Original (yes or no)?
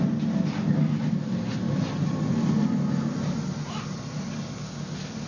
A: yes